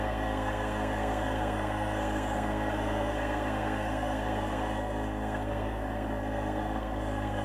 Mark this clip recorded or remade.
remade